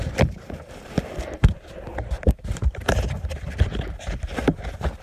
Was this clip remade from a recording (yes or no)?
yes